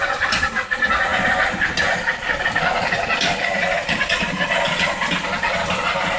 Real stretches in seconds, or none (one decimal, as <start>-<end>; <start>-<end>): 0.0-6.2